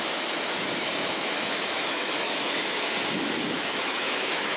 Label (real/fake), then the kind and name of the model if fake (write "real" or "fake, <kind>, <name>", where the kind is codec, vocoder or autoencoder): fake, autoencoder, DAC-VAE